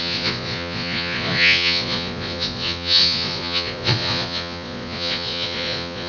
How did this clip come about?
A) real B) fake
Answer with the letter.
B